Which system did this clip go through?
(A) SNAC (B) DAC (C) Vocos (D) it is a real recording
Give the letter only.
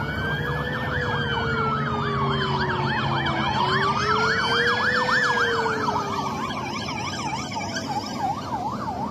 D